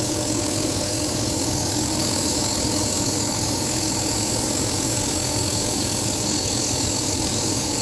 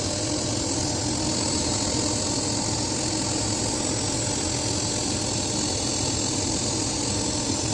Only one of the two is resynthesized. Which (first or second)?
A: first